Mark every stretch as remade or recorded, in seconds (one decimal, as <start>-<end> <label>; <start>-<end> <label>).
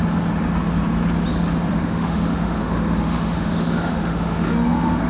0.0-1.7 recorded; 1.7-5.1 remade